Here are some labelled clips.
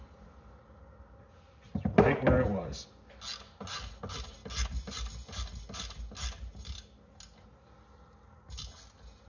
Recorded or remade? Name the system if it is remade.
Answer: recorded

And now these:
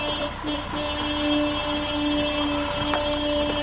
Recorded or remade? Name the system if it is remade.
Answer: recorded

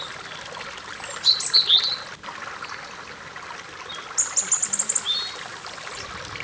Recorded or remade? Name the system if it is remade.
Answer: recorded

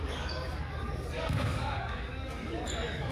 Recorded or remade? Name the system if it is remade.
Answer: remade, codec, DAC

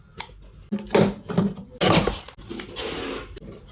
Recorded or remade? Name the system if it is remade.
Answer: recorded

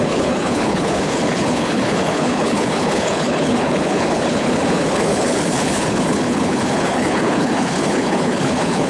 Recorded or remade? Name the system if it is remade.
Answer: remade, codec, HILCodec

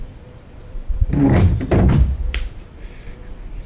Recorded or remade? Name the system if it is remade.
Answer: remade, vocoder, BigVGAN v2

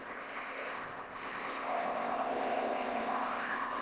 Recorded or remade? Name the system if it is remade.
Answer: remade, codec, ZipCodec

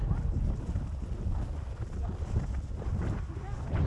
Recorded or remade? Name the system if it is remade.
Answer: recorded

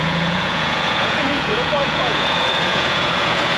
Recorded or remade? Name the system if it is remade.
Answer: remade, vocoder, Vocos